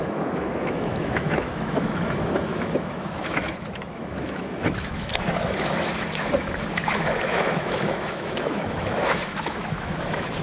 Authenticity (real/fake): fake